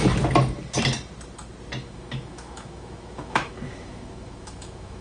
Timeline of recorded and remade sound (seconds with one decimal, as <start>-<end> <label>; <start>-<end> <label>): 0.0-1.8 recorded; 1.8-5.0 remade